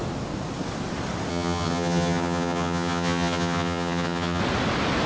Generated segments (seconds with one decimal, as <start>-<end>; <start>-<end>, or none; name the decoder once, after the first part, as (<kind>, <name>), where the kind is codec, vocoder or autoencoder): 1.3-4.4 (vocoder, HiFi-GAN)